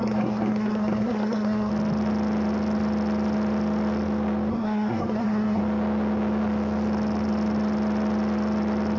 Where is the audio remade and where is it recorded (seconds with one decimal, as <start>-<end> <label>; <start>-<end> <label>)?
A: 0.0-1.7 remade; 1.7-4.5 recorded; 4.5-5.6 remade; 5.6-9.0 recorded